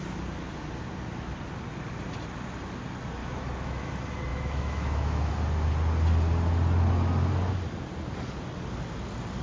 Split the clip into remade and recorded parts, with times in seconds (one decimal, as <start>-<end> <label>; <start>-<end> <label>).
0.0-3.2 recorded; 3.2-3.9 remade; 3.9-4.3 recorded; 4.3-5.3 remade; 5.3-9.4 recorded